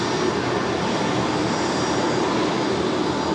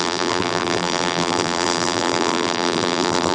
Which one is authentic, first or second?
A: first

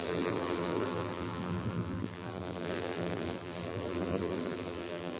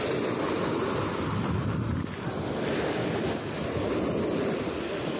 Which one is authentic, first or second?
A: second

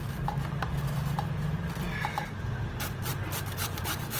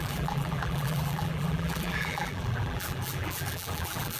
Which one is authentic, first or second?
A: first